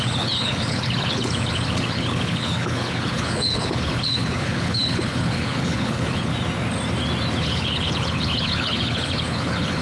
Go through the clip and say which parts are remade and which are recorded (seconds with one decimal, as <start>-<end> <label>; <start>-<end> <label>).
0.0-6.3 remade; 6.3-7.4 recorded; 7.4-9.8 remade